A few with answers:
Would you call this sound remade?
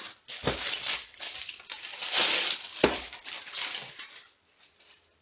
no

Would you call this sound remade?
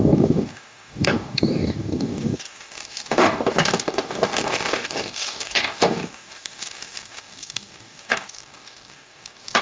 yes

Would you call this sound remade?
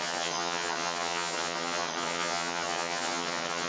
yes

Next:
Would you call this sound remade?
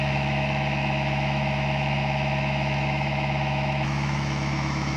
yes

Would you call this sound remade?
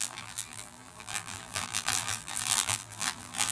yes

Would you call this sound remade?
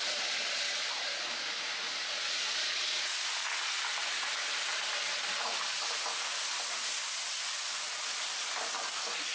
no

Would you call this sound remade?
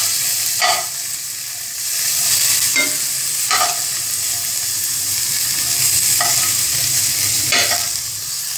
no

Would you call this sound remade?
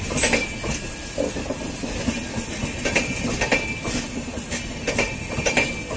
no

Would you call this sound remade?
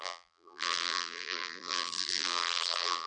yes